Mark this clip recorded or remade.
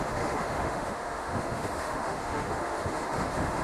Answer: remade